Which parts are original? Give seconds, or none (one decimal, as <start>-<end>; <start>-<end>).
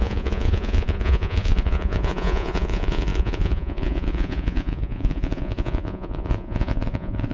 none